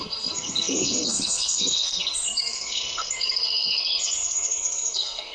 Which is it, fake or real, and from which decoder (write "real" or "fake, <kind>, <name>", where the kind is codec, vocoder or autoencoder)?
fake, codec, SNAC